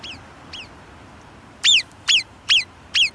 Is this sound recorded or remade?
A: remade